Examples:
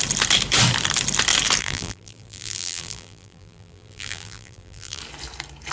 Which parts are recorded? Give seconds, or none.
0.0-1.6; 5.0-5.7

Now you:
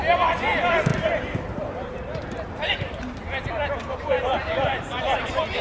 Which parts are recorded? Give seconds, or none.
0.0-0.9; 2.8-3.8

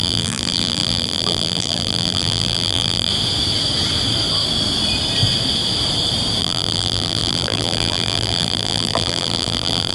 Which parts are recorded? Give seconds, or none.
3.1-6.4

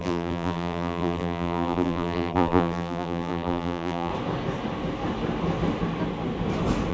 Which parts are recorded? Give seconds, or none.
4.1-6.9

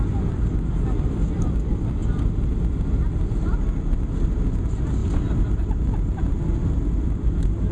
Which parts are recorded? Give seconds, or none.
2.0-3.1; 5.0-5.7